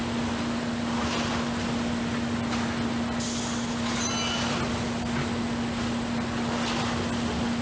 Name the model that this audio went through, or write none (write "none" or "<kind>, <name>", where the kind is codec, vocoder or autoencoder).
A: none